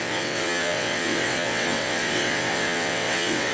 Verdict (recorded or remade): remade